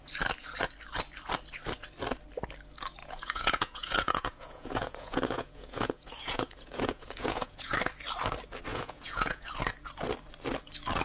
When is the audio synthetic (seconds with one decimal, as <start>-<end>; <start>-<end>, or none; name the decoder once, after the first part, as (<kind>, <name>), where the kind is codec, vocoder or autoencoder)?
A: 3.0-7.7 (vocoder, Vocos); 8.7-9.5

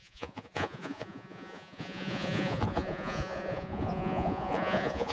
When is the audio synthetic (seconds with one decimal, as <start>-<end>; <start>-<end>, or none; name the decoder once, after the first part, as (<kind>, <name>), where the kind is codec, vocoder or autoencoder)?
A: 0.0-5.1 (vocoder, Vocos)

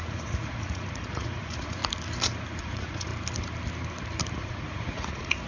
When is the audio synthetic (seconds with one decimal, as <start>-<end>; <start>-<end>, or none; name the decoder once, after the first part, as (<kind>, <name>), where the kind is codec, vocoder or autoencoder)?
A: 0.0-1.8 (vocoder, Vocos); 2.6-3.1; 4.3-5.5

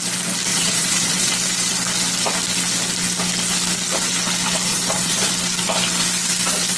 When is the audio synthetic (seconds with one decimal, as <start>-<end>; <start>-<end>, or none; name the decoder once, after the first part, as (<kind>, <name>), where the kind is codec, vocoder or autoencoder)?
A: 0.5-1.3 (vocoder, Vocos); 4.7-5.3

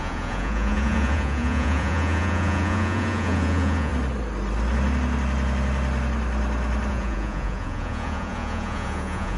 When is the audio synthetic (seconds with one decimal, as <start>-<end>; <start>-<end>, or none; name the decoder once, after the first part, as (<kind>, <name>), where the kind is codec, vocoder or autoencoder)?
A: 0.0-3.9 (vocoder, Vocos); 6.9-9.4

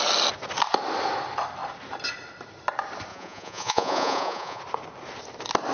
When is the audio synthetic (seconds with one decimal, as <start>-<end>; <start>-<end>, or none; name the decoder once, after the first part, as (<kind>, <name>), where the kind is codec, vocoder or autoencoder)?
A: 3.1-4.6 (vocoder, Vocos)

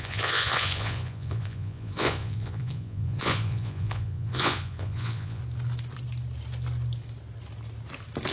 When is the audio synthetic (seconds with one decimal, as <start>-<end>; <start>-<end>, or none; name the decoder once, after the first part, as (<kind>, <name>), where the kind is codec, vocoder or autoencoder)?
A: 0.0-5.4 (vocoder, Vocos)